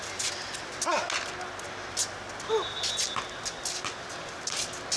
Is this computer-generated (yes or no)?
no